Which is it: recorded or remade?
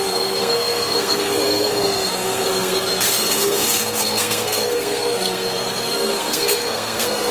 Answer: remade